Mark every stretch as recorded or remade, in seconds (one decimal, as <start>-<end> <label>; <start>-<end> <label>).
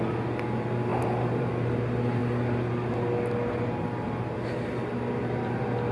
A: 0.0-0.9 recorded; 0.9-1.5 remade; 1.5-5.9 recorded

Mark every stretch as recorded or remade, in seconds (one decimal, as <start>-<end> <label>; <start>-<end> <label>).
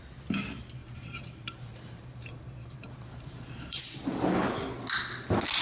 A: 0.0-0.8 recorded; 0.8-4.0 remade; 4.0-5.6 recorded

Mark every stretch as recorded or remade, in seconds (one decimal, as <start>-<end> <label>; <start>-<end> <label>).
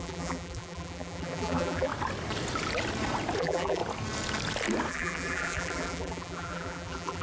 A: 0.0-1.9 remade; 1.9-3.4 recorded; 3.4-3.8 remade; 3.8-4.9 recorded; 4.9-7.2 remade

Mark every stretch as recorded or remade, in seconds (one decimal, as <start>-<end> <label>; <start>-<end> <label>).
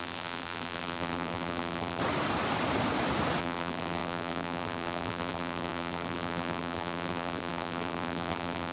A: 0.0-2.0 remade; 2.0-3.4 recorded; 3.4-8.7 remade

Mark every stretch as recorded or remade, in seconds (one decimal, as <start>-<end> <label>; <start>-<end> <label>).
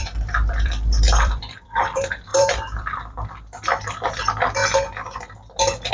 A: 0.0-4.6 remade; 4.6-5.9 recorded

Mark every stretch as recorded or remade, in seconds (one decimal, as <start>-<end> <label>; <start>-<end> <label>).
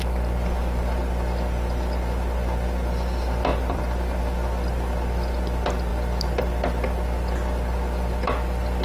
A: 0.0-3.5 recorded; 3.5-4.2 remade; 4.2-8.8 recorded